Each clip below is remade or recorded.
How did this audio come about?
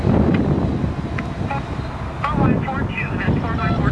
recorded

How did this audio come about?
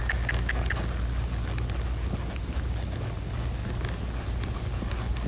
recorded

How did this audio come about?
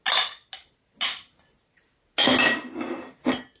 recorded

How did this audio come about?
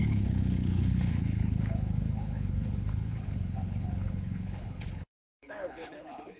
remade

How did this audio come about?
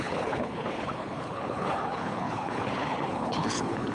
remade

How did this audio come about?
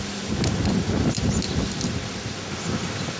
recorded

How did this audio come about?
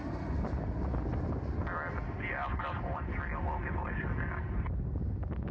recorded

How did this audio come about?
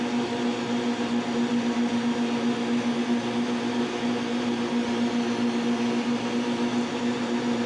recorded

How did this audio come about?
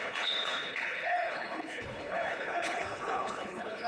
remade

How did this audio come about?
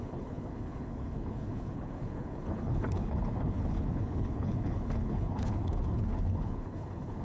remade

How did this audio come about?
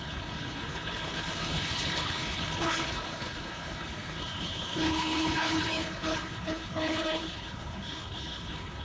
remade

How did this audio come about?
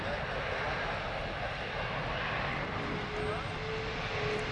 recorded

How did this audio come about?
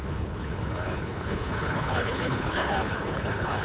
remade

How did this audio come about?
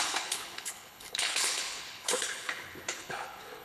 remade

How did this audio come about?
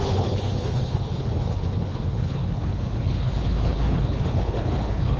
remade